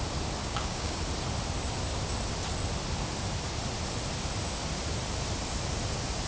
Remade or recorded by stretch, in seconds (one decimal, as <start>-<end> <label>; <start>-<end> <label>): 0.0-0.4 recorded; 0.4-1.0 remade; 1.0-6.3 recorded